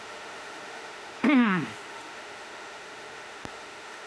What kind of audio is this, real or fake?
fake